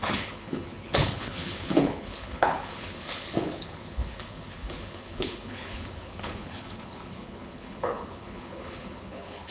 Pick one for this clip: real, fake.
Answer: fake